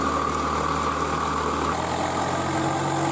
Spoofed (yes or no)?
no